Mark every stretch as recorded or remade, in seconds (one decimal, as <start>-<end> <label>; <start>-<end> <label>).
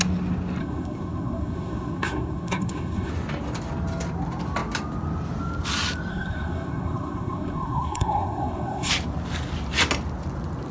0.0-0.6 recorded; 0.6-3.1 remade; 3.1-6.1 recorded; 6.1-8.9 remade; 8.9-10.7 recorded